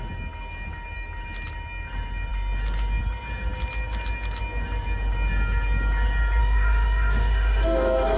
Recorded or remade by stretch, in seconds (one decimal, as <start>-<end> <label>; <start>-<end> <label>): 0.0-6.4 recorded; 6.4-8.2 remade